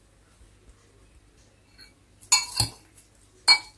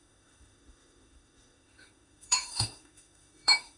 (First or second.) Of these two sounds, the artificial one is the second